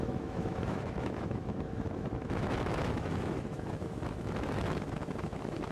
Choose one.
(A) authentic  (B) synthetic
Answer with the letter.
B